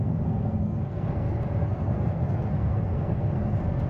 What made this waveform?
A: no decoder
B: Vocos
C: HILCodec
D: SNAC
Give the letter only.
D